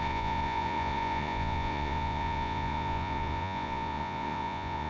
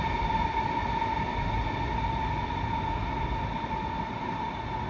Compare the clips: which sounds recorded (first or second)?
second